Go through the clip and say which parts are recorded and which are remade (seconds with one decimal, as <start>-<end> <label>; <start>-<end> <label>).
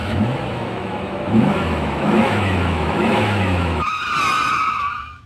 0.0-3.9 remade; 3.9-4.5 recorded; 4.5-5.3 remade